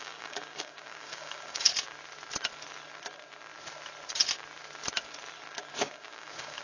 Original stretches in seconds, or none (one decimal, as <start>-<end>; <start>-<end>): 1.7-5.7